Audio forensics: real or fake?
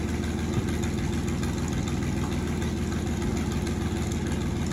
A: real